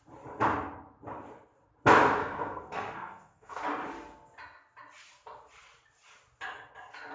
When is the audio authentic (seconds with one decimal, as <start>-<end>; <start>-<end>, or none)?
0.0-2.2; 3.6-7.1

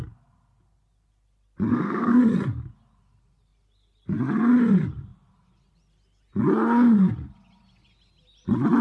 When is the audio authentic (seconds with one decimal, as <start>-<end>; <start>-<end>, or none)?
0.0-1.7; 2.2-8.8

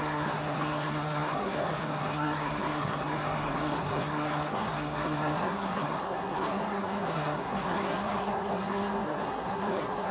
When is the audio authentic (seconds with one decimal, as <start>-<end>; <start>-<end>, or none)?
none

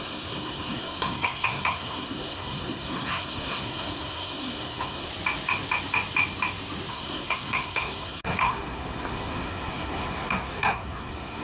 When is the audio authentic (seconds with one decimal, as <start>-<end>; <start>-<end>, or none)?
5.1-6.9

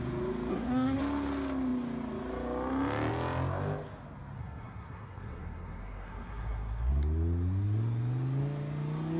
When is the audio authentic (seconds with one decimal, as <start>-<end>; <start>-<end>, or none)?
0.0-0.5; 1.0-4.4; 6.9-9.2

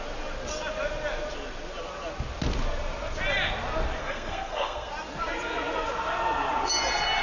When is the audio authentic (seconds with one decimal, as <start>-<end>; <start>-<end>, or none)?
0.0-4.0; 4.9-7.2

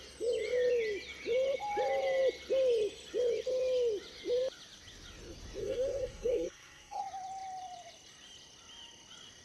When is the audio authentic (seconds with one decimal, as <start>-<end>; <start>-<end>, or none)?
0.0-5.6; 7.0-9.4